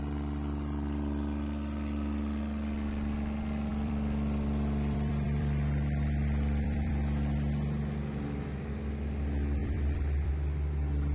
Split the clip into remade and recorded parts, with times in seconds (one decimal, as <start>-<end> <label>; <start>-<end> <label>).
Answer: 0.0-3.7 recorded; 3.7-6.9 remade; 6.9-9.6 recorded; 9.6-10.3 remade; 10.3-11.1 recorded